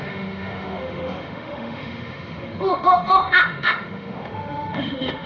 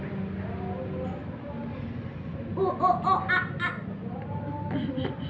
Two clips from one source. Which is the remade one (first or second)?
first